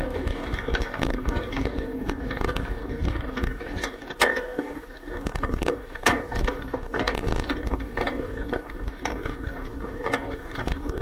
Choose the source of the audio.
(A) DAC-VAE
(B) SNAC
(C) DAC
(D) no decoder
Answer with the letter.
C